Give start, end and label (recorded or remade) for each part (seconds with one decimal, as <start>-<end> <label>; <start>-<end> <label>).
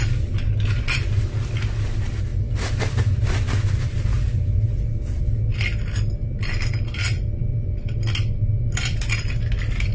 0.0-9.9 recorded